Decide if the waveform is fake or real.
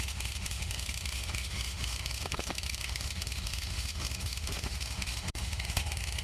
fake